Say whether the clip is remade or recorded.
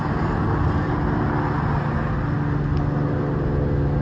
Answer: recorded